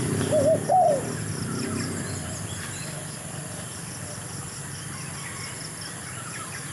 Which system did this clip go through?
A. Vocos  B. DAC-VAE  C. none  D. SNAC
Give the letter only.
C